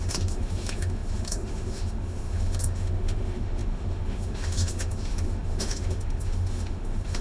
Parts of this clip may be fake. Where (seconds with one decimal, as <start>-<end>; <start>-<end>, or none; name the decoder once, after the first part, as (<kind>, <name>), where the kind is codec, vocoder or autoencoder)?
0.0-7.2 (autoencoder, DAC-VAE)